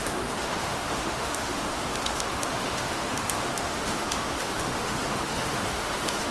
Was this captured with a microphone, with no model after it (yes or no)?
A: no